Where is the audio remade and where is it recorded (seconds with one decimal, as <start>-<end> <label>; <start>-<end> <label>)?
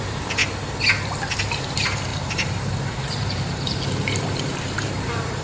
0.0-0.4 remade; 0.4-1.4 recorded; 1.4-5.4 remade